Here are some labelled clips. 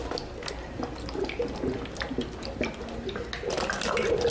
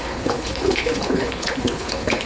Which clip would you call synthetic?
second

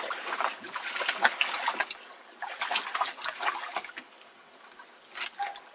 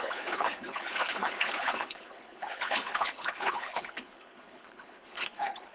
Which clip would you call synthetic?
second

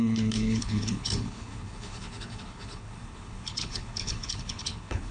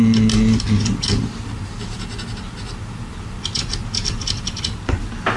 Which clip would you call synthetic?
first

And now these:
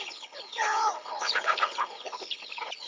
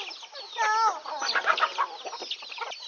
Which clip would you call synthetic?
first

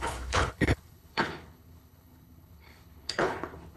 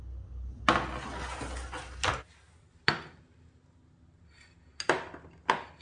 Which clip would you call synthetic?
first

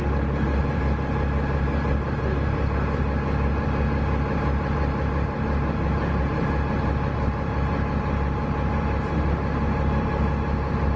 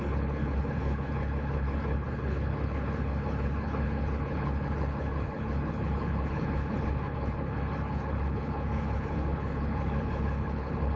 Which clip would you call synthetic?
second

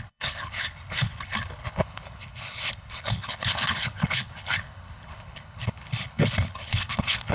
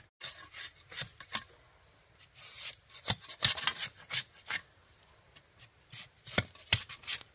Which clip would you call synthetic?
first